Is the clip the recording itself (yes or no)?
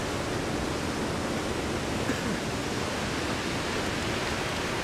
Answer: yes